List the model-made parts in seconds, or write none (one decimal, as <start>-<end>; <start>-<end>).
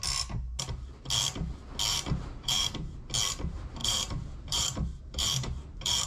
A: 1.9-3.0; 3.8-6.1